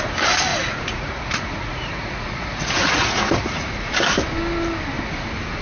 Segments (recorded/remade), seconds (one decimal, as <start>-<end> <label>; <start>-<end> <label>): 0.0-0.5 recorded; 0.5-3.9 remade; 3.9-5.6 recorded